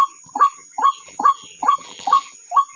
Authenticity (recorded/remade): remade